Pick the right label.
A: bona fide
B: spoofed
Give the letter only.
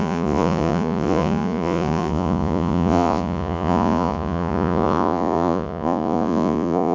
B